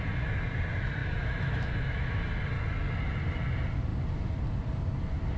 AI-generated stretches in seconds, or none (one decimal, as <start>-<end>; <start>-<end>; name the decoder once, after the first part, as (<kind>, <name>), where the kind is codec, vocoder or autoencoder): 1.0-2.2 (autoencoder, DAC-VAE)